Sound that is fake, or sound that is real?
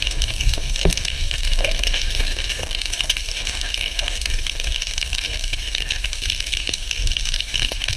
fake